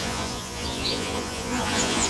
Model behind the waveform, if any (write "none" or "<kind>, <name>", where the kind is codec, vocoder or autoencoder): vocoder, Vocos